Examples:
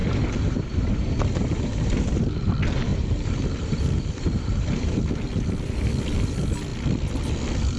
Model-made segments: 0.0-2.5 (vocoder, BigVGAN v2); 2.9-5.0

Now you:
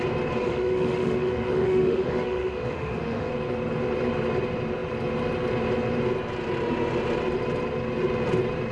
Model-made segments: 0.4-3.3 (autoencoder, DAC-VAE)

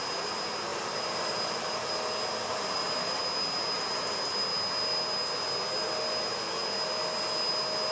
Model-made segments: 0.7-1.9 (vocoder, BigVGAN v2); 2.5-3.2

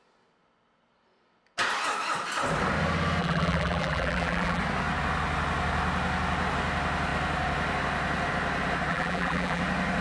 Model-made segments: 3.2-4.6 (vocoder, BigVGAN v2); 8.9-9.6

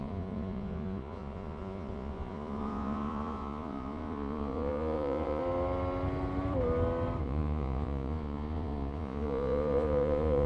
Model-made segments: 0.0-5.4 (vocoder, Vocos); 7.2-10.5

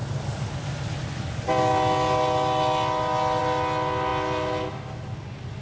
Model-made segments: none